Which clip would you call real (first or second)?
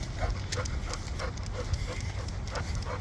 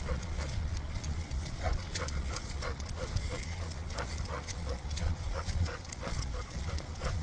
first